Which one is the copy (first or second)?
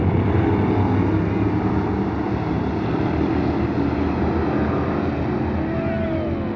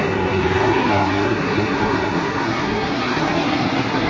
second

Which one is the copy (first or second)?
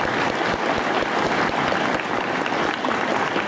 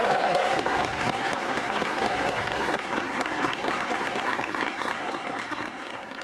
second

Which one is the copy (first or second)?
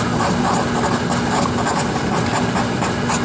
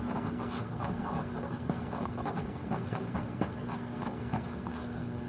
second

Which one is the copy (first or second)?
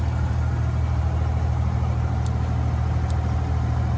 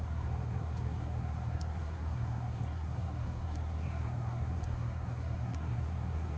second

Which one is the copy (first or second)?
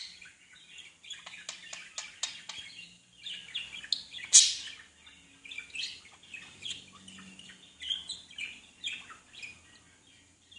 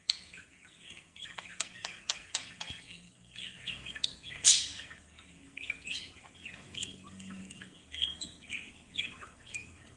second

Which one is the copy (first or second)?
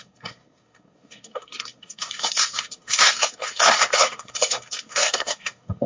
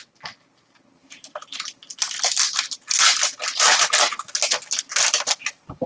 first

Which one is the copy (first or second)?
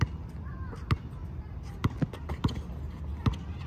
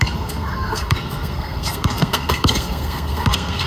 second